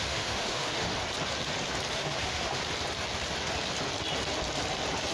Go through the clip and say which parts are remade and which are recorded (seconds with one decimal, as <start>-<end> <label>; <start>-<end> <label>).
0.0-0.9 remade; 0.9-1.9 recorded; 1.9-2.6 remade; 2.6-5.1 recorded